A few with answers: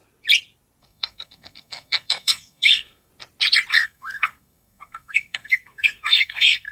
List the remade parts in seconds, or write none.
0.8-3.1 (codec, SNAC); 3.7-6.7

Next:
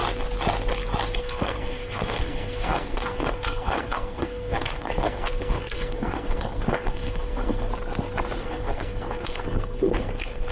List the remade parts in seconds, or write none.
1.2-7.7 (codec, SNAC); 8.4-10.5

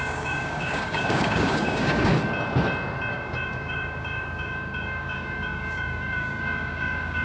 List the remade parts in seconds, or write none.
0.0-2.1 (codec, DAC); 3.1-7.2

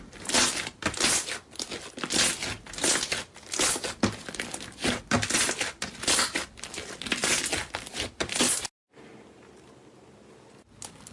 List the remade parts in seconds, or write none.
none

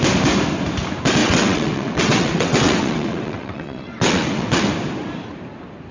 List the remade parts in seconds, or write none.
1.2-4.7 (vocoder, WaveNeXt)

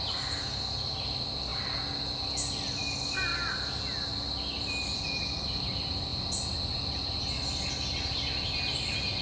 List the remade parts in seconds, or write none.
none